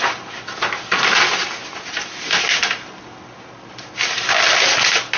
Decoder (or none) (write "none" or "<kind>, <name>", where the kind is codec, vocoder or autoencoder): none